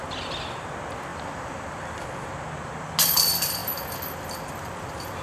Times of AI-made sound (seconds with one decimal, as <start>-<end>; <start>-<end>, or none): 1.1-2.3